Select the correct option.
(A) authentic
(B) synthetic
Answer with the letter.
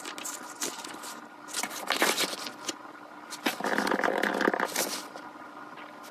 A